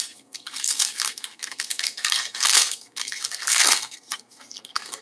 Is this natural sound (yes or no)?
no